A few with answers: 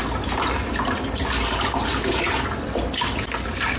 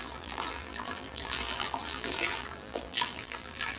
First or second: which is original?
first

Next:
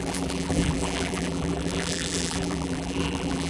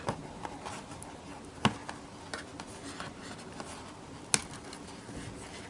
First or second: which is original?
second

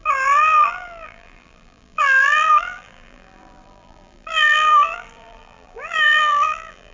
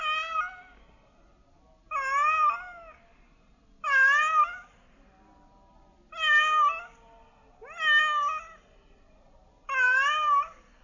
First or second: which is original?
second